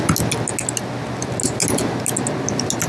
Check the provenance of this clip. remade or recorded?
recorded